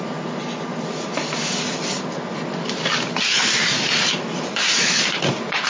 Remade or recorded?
recorded